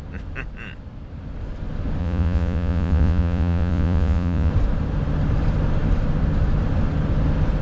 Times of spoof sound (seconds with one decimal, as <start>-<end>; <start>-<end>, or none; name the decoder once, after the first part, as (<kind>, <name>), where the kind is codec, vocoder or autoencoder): 2.0-4.5 (vocoder, Vocos)